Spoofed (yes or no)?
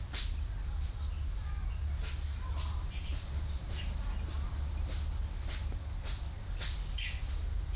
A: no